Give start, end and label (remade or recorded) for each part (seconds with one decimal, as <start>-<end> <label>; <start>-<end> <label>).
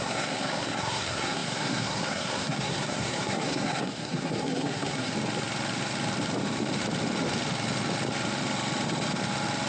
0.0-5.1 remade; 5.1-9.7 recorded